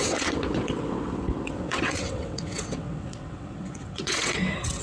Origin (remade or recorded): remade